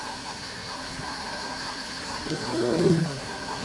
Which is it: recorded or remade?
remade